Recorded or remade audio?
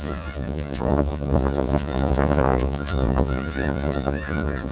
remade